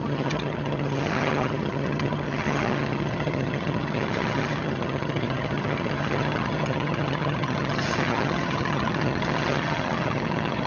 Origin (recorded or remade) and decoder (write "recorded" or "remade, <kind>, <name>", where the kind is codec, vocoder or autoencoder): remade, vocoder, HiFi-GAN